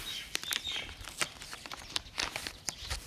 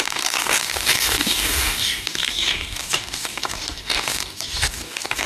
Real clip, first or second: first